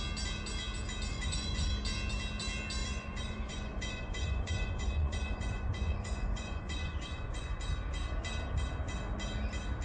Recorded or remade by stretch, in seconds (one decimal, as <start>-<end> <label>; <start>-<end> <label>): 0.0-1.1 recorded; 1.1-1.7 remade; 1.7-2.8 recorded; 2.8-7.6 remade; 7.6-9.8 recorded